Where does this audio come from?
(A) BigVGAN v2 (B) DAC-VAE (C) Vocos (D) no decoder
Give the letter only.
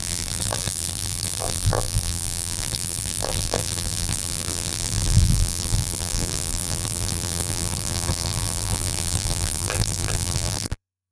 A